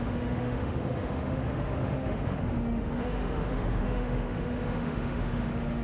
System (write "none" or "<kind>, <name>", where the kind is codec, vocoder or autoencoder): autoencoder, DAC-VAE